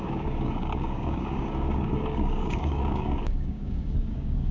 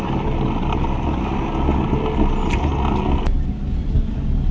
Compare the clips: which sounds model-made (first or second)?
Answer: first